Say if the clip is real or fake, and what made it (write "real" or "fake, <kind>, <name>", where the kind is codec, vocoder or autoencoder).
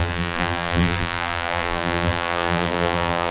fake, vocoder, BigVGAN v2